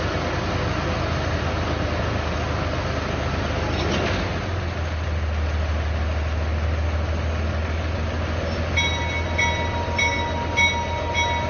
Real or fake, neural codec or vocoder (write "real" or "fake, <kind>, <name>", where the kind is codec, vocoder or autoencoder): real